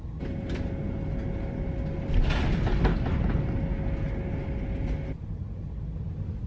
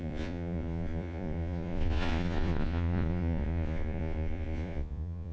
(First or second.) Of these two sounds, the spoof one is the second